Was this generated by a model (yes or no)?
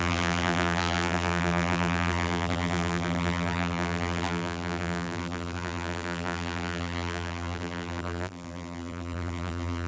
yes